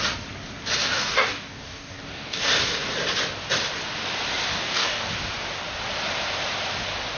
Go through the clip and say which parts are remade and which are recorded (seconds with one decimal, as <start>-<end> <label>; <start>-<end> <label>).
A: 0.0-0.8 recorded; 0.8-2.4 remade; 2.4-4.5 recorded; 4.5-5.1 remade; 5.1-7.2 recorded